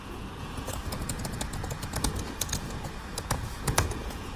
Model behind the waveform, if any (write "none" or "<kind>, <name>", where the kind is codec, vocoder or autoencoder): vocoder, Vocos